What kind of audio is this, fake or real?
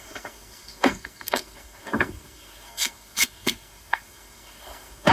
fake